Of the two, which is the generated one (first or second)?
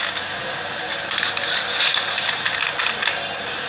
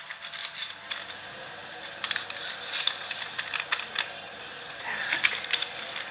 second